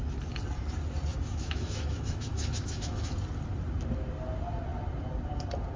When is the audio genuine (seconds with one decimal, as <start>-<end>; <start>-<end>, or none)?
0.0-1.1; 3.1-5.8